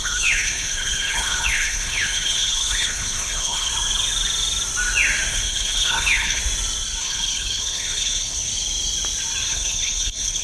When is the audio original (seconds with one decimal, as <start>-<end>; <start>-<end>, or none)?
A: 3.7-5.3; 6.4-7.0; 8.5-9.5